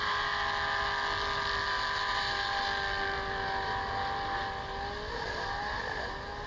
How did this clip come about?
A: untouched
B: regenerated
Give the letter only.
A